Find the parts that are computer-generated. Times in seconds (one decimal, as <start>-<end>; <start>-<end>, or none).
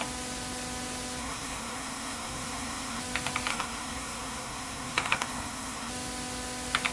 1.2-3.0; 3.5-5.9